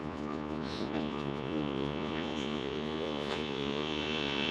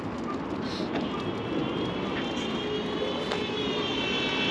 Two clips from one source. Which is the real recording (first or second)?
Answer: second